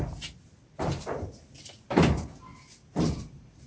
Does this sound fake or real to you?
real